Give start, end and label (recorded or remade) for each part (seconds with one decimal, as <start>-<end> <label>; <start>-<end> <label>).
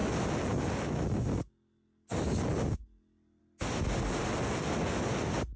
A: 0.0-5.6 recorded